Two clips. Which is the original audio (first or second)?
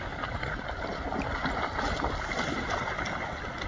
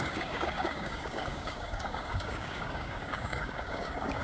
first